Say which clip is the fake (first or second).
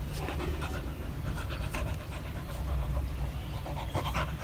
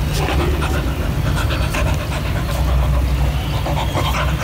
first